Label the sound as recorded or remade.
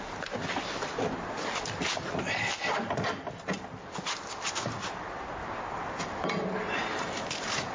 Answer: recorded